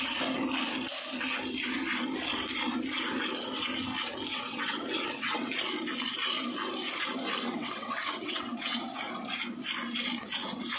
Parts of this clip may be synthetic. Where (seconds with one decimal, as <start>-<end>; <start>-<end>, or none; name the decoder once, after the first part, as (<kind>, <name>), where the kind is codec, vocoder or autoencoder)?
4.3-5.5 (vocoder, WaveNeXt); 7.5-8.8